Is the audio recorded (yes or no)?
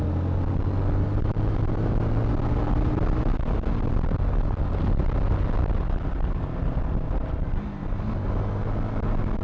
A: yes